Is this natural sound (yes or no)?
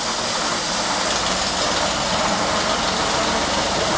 yes